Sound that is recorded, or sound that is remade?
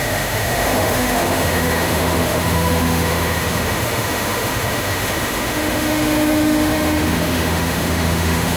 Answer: remade